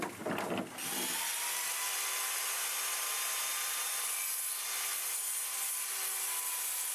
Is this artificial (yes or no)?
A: no